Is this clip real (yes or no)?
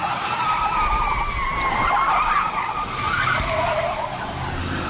yes